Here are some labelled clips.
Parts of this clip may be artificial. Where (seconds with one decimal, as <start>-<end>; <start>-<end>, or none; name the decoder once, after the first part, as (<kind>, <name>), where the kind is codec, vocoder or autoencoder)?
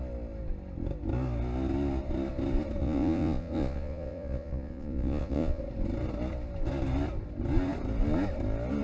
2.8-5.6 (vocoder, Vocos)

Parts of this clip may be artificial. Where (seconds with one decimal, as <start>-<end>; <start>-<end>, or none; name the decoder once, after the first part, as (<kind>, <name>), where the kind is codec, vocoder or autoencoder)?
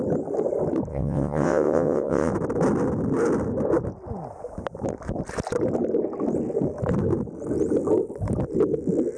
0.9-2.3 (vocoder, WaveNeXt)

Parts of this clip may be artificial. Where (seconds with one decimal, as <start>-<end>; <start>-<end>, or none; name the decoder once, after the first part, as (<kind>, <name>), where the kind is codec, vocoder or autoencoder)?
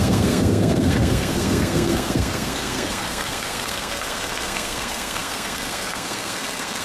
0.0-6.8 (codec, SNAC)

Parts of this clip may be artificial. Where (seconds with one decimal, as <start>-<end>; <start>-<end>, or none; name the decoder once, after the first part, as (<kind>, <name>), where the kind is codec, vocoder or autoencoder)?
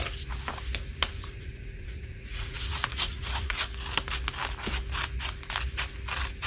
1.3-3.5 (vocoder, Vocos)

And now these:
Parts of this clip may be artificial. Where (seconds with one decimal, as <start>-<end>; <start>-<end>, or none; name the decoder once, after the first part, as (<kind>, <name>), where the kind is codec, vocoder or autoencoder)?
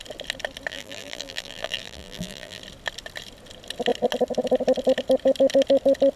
0.7-2.6 (vocoder, BigVGAN v2)